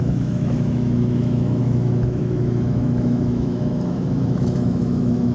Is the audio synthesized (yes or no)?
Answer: yes